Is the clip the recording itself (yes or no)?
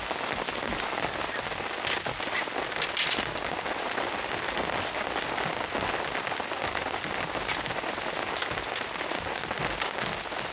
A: yes